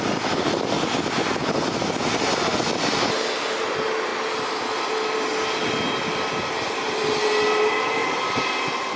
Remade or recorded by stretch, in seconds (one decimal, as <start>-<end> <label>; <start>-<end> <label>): 0.0-8.0 recorded; 8.0-8.5 remade; 8.5-9.0 recorded